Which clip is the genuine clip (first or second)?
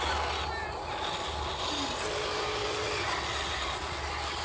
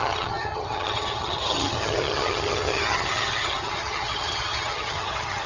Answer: first